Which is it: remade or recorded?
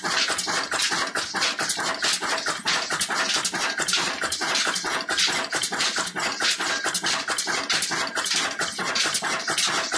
recorded